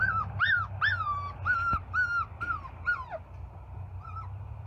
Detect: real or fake real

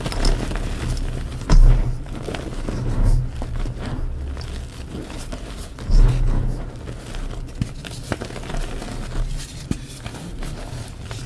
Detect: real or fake real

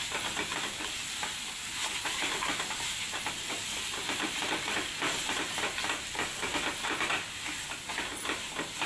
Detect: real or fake real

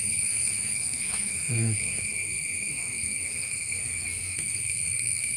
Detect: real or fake fake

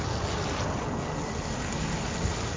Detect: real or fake real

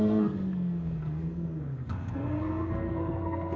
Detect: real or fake fake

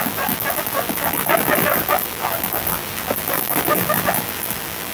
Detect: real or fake fake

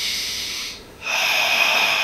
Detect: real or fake fake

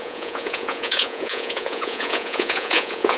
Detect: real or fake fake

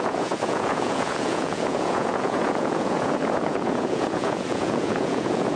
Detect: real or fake fake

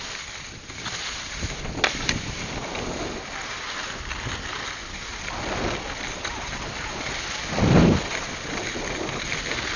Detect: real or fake real